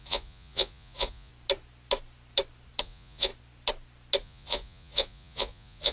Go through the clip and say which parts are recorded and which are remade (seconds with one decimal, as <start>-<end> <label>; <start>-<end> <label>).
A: 0.0-1.3 remade; 1.3-2.8 recorded; 2.8-3.3 remade; 3.3-4.2 recorded; 4.2-5.9 remade